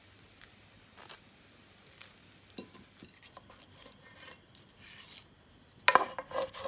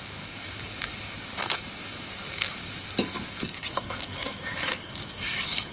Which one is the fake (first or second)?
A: second